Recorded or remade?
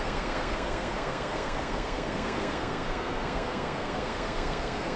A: remade